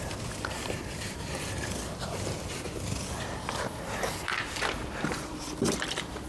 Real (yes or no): yes